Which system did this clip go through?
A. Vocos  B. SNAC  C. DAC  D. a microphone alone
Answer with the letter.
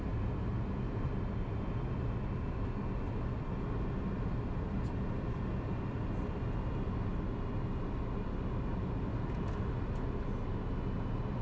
D